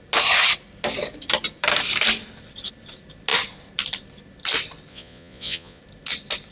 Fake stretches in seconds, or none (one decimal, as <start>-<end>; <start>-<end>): 4.9-5.8